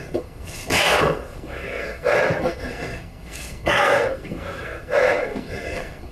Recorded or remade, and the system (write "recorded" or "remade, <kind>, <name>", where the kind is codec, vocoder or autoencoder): remade, codec, SNAC